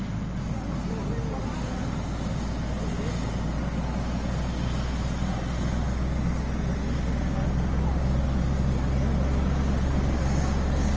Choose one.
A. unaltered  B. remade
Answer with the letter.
A